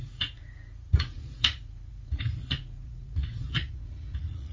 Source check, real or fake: fake